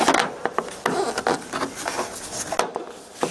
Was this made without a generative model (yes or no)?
yes